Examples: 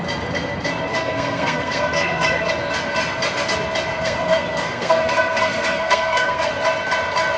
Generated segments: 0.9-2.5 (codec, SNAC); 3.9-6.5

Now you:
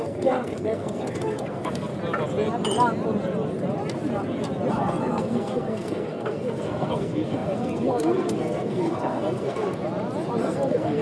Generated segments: 0.0-1.9 (codec, SNAC); 4.7-9.8; 10.4-11.0

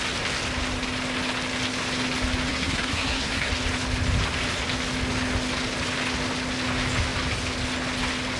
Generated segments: 2.5-3.5 (codec, SNAC)

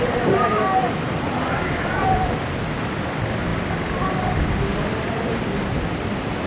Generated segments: none

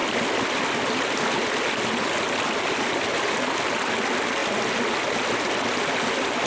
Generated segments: none

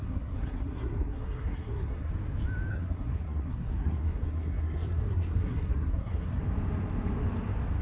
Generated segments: 0.0-2.1 (codec, SNAC); 2.7-6.4